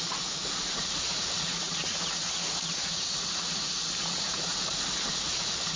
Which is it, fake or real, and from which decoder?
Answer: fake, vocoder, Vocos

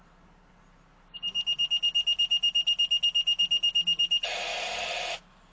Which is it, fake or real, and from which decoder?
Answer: real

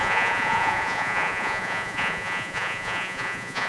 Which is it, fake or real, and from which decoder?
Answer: fake, vocoder, Vocos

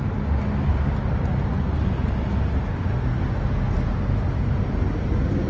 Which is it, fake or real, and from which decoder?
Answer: real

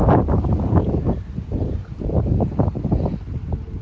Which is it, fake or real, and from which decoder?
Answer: real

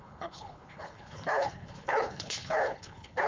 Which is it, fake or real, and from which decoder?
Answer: fake, codec, HILCodec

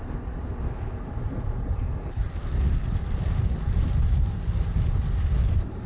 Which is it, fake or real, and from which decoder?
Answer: real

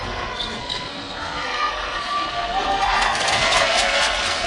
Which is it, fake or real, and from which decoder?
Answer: fake, codec, SNAC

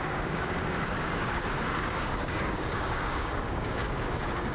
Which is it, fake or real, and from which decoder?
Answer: fake, codec, DAC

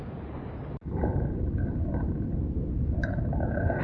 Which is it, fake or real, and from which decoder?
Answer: real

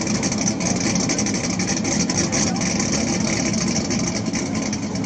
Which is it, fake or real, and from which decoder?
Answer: real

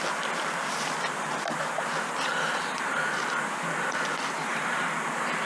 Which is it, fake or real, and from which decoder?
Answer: real